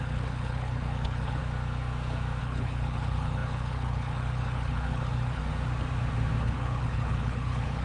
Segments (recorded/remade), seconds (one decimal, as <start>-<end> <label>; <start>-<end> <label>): 0.0-1.4 remade; 1.4-2.4 recorded; 2.4-5.4 remade; 5.4-6.4 recorded; 6.4-7.8 remade